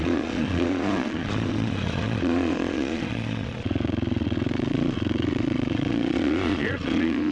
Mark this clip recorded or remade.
remade